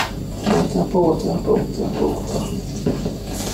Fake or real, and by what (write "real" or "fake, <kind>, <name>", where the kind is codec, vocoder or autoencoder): real